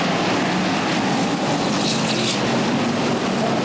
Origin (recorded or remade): recorded